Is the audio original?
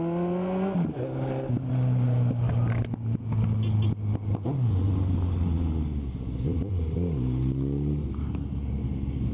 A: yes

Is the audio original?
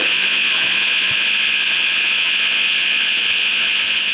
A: no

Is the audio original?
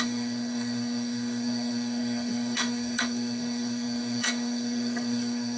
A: no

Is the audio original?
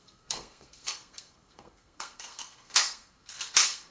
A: no